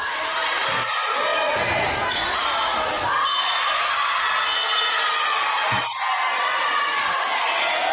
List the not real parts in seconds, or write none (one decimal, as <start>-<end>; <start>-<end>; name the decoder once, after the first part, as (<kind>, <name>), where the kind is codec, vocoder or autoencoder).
none